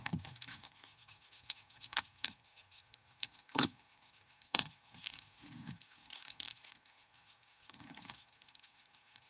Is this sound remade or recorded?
remade